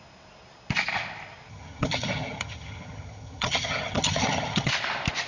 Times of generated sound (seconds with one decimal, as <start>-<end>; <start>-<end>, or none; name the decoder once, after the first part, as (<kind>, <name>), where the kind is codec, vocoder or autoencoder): 1.5-4.7 (vocoder, HiFi-GAN)